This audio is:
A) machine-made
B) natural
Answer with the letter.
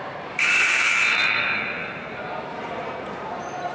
A